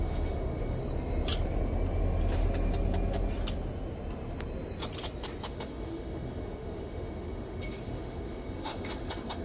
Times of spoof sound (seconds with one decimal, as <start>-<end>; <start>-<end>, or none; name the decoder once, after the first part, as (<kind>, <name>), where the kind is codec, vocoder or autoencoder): 0.0-0.8 (autoencoder, DAC-VAE); 5.5-9.4